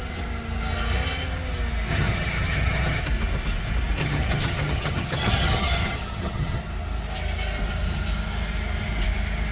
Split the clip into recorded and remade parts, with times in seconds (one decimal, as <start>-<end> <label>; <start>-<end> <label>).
0.0-1.9 recorded; 1.9-3.0 remade; 3.0-4.0 recorded; 4.0-6.6 remade; 6.6-9.5 recorded